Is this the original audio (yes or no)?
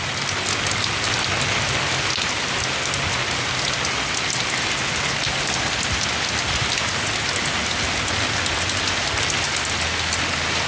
yes